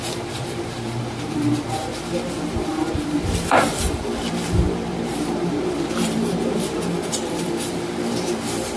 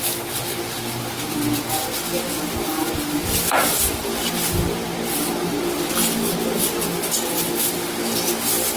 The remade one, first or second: first